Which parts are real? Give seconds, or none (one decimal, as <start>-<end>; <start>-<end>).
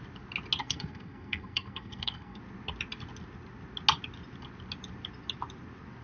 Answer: 0.0-0.6; 2.4-6.0